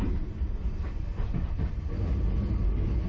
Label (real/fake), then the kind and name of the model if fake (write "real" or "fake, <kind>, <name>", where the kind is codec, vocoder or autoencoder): real